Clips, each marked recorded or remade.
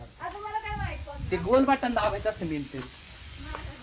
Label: remade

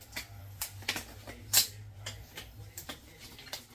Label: recorded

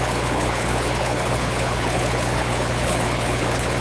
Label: remade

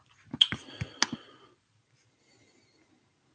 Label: recorded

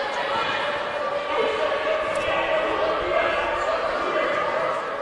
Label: recorded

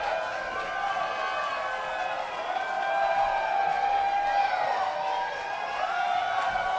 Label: recorded